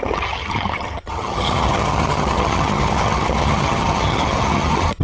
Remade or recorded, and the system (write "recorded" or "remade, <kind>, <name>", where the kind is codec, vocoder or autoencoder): remade, vocoder, HiFi-GAN